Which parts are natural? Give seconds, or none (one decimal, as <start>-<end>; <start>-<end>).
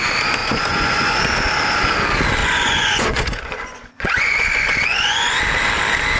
0.0-0.4; 1.2-2.4; 5.4-6.2